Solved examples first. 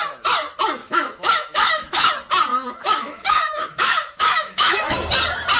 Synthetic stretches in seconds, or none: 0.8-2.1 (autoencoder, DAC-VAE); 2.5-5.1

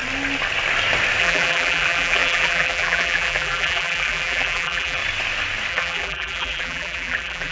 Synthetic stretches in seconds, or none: 1.2-5.0 (vocoder, BigVGAN v2); 5.7-7.5

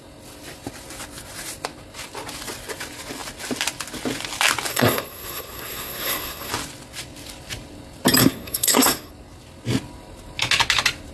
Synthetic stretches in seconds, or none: 4.7-6.5 (codec, SNAC); 8.2-9.1

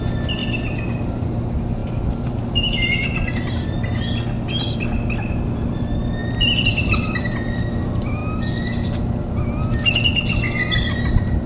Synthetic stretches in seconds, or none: none

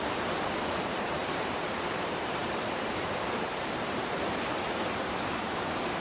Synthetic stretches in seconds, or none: 0.0-6.0 (vocoder, BigVGAN v2)